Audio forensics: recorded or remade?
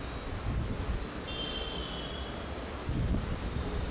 recorded